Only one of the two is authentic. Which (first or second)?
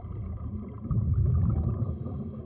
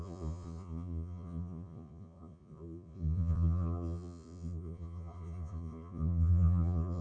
first